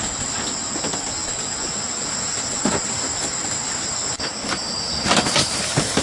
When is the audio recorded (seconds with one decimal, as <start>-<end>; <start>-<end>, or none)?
0.0-6.0